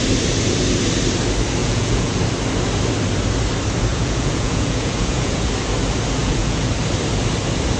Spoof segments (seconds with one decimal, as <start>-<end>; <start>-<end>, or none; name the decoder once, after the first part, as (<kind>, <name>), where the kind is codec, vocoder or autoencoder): 1.6-2.2 (vocoder, Vocos); 3.9-5.5; 6.2-6.7